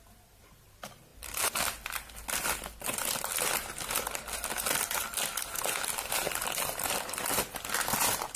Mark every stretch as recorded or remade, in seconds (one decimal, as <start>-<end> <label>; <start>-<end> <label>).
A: 0.0-8.4 recorded